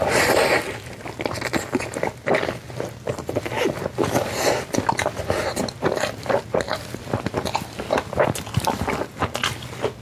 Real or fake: real